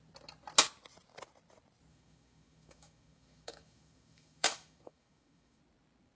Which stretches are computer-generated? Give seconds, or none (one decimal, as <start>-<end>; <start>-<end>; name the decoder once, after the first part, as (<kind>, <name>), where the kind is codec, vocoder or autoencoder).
1.9-5.6 (autoencoder, DAC-VAE)